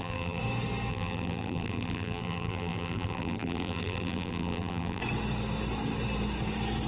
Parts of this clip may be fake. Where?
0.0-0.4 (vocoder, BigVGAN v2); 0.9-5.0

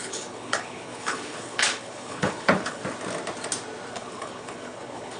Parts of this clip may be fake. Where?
0.0-2.8 (codec, HILCodec); 3.9-5.2

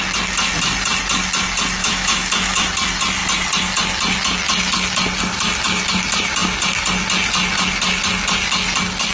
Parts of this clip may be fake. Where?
1.8-2.7 (autoencoder, DAC-VAE)